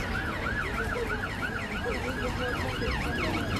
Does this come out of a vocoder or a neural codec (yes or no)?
no